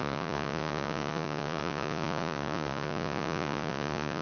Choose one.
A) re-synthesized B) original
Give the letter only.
A